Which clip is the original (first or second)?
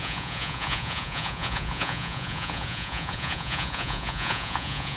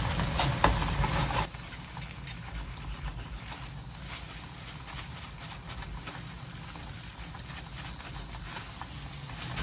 second